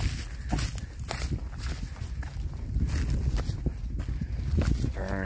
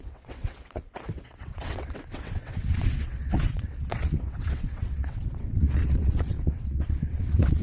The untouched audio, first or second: first